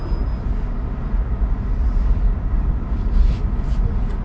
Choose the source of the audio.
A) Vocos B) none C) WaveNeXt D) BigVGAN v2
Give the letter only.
B